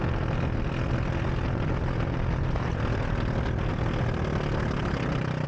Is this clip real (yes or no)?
yes